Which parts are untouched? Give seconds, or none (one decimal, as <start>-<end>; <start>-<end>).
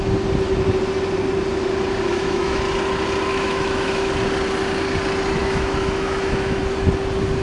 0.0-2.1; 2.6-3.3; 4.1-5.4; 6.6-7.4